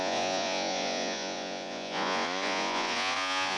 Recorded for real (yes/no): no